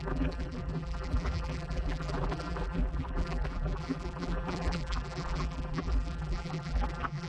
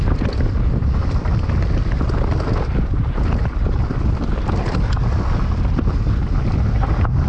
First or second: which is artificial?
first